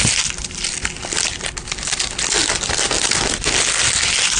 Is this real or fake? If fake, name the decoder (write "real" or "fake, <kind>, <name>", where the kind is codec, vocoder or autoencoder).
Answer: real